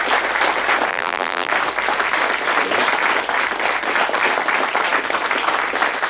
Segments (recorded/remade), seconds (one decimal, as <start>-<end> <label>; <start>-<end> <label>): 0.0-0.9 recorded; 0.9-1.5 remade; 1.5-6.1 recorded